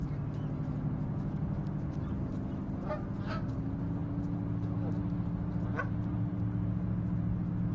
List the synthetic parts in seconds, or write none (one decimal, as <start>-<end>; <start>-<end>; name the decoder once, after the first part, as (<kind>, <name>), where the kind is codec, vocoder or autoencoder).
none